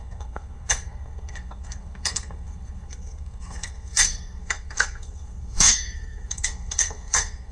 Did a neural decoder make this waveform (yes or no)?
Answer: yes